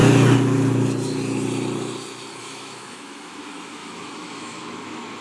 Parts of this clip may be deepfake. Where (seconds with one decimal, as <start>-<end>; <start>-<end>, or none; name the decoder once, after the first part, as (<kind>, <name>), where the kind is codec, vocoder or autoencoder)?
2.4-5.2 (autoencoder, DAC-VAE)